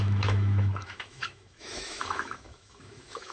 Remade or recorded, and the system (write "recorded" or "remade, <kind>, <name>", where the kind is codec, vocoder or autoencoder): remade, autoencoder, DAC-VAE